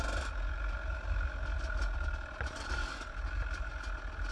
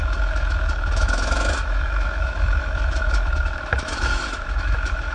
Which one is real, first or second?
first